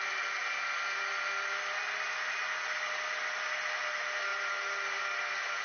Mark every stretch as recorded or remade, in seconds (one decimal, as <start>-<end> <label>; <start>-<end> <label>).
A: 0.0-5.6 recorded